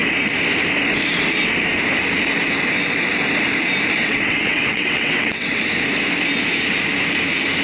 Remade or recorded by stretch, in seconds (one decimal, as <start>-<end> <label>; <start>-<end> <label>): 0.0-4.0 recorded; 4.0-5.6 remade; 5.6-7.6 recorded